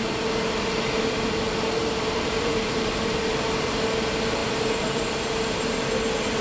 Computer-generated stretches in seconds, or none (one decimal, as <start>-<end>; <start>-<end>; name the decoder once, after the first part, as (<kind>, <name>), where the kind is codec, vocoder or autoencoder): 1.8-3.3 (vocoder, BigVGAN v2); 4.4-5.9